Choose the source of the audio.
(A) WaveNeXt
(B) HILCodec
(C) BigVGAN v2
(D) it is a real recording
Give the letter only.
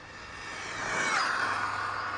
D